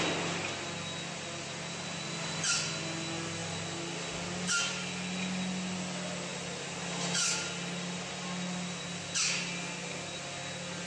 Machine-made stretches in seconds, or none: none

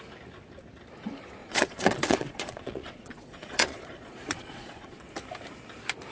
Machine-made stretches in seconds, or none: 1.4-5.0 (vocoder, Vocos)